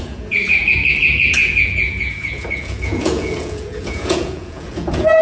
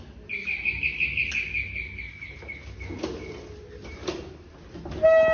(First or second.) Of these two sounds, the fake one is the first